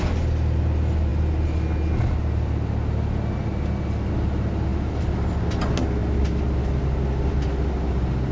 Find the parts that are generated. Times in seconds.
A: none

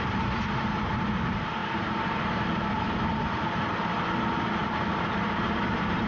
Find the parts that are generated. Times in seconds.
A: 0.0-3.2 (vocoder, BigVGAN v2); 4.6-6.1